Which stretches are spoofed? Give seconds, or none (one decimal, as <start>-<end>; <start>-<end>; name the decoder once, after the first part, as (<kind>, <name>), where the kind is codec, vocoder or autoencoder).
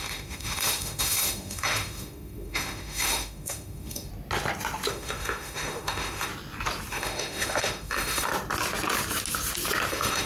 0.0-4.1 (autoencoder, DAC-VAE); 4.9-6.3; 6.9-8.3; 9.9-10.3